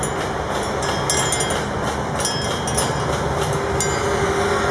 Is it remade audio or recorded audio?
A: recorded